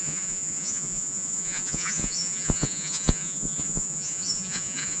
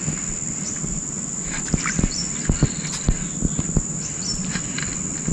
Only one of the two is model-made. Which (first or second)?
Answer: first